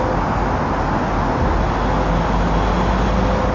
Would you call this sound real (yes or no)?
yes